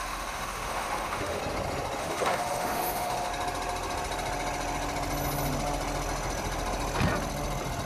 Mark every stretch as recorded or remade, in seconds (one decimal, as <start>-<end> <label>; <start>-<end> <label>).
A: 0.0-1.4 remade; 1.4-2.0 recorded; 2.0-3.3 remade; 3.3-7.9 recorded